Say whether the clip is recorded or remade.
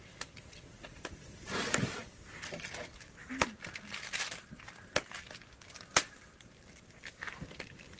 recorded